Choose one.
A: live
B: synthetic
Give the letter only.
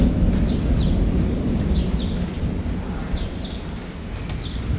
A